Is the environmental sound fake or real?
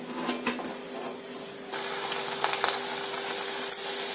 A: real